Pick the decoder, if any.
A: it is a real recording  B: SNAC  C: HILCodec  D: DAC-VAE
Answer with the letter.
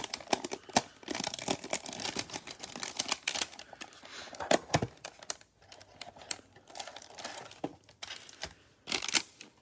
A